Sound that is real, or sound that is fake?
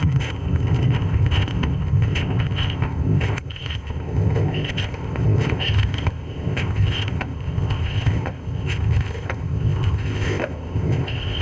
fake